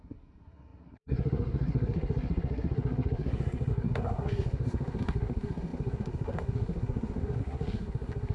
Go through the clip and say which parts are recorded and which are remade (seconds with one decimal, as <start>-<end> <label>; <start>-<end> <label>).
0.0-8.3 remade